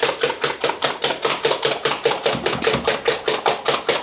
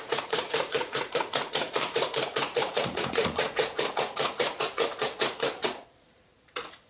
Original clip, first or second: first